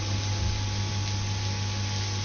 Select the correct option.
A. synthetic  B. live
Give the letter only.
B